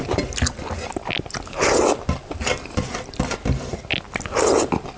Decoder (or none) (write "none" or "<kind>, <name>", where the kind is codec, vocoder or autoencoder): none